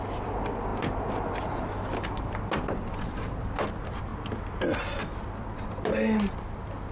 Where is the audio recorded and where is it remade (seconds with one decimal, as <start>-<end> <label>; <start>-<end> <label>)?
0.0-6.9 recorded